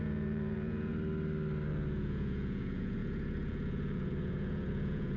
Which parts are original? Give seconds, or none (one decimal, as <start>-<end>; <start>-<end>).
0.9-1.7